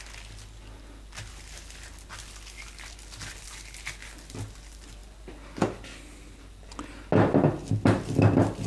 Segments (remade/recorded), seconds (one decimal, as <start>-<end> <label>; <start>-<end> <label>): 0.0-8.7 recorded